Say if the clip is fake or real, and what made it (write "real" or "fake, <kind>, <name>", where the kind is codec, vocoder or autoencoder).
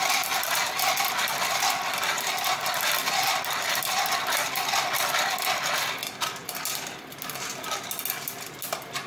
real